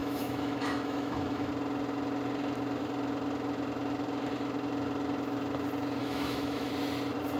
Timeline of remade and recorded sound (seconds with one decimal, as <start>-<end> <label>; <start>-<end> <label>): 0.0-1.5 remade; 1.5-6.0 recorded; 6.0-6.7 remade; 6.7-7.4 recorded